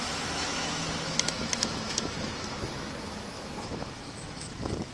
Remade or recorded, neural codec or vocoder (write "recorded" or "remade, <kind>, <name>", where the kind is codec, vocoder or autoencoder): remade, autoencoder, DAC-VAE